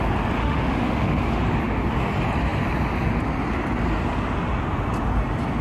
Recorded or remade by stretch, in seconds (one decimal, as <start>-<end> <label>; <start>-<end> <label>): 0.0-0.4 recorded; 0.4-1.4 remade; 1.4-5.6 recorded